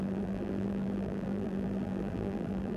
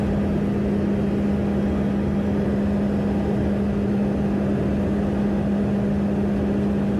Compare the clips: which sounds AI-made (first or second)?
first